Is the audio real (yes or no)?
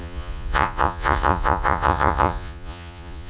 no